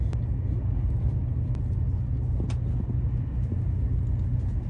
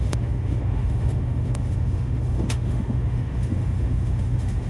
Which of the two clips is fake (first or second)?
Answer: second